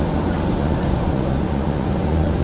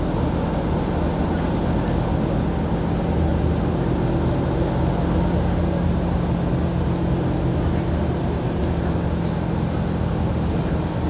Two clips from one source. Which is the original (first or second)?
second